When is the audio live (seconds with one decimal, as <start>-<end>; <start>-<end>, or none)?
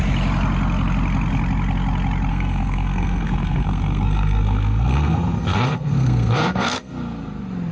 0.0-2.3; 6.9-7.7